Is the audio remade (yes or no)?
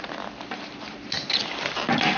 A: no